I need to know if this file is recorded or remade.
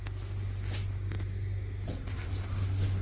recorded